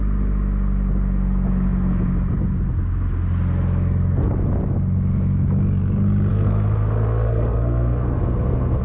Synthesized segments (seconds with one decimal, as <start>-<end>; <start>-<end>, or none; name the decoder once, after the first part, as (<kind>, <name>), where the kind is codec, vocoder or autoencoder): 6.3-8.8 (codec, SNAC)